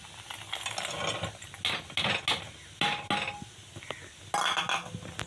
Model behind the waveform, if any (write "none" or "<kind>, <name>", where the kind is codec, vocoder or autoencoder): none